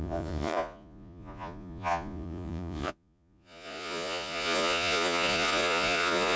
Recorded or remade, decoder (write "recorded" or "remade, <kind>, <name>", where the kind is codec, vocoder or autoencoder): remade, vocoder, Vocos